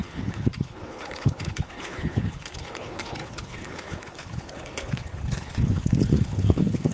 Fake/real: fake